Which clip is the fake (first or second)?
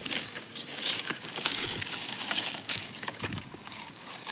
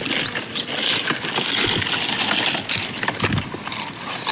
first